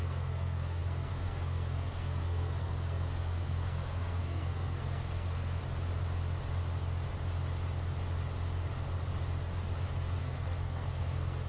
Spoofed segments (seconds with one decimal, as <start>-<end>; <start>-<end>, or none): 0.0-5.6; 10.2-11.5